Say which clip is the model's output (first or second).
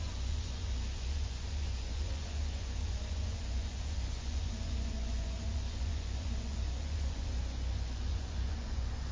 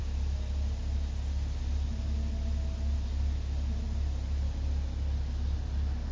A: first